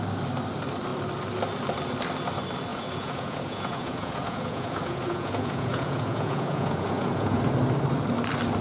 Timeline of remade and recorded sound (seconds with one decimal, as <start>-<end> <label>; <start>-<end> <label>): 0.0-2.7 recorded; 2.7-7.4 remade; 7.4-8.6 recorded